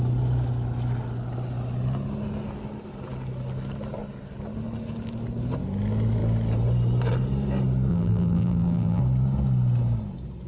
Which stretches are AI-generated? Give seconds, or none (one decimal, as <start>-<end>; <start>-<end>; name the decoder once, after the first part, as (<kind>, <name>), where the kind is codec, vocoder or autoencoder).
7.9-9.0 (vocoder, BigVGAN v2)